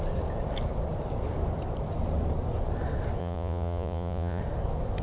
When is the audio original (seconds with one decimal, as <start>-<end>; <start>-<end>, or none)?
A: 0.0-3.2; 4.4-5.0